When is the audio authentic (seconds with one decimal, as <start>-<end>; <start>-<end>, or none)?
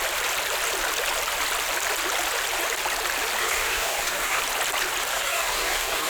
0.0-3.4; 4.4-5.1